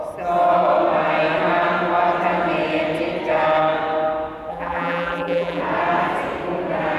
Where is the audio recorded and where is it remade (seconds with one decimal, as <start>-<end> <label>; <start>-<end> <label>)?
0.0-4.5 recorded; 4.5-5.6 remade; 5.6-7.0 recorded